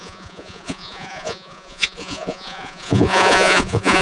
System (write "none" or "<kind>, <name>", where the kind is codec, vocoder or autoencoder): vocoder, Vocos